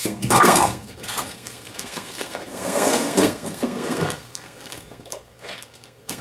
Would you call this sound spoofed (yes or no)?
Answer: yes